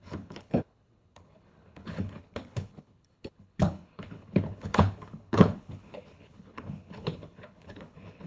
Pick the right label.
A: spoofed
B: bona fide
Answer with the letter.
A